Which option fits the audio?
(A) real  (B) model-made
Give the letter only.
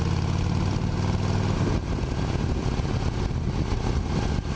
A